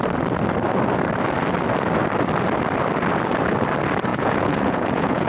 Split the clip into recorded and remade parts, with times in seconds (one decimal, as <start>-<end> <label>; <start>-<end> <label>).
0.0-4.1 recorded; 4.1-5.3 remade